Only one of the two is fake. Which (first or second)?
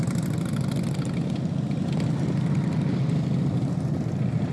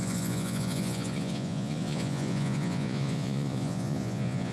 second